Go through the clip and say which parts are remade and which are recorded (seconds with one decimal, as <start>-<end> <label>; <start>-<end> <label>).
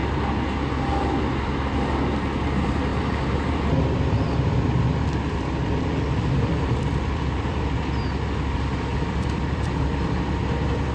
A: 0.0-2.9 recorded; 2.9-7.6 remade; 7.6-8.9 recorded; 8.9-9.7 remade; 9.7-10.9 recorded